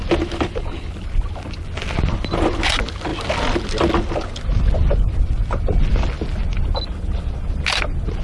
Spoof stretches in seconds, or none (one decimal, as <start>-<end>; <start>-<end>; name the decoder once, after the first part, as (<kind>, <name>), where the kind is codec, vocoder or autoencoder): none